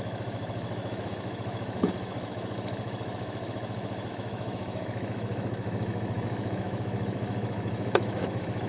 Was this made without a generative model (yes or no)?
no